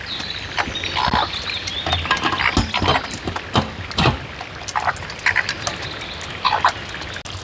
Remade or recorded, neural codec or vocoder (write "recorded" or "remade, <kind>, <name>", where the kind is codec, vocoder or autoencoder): recorded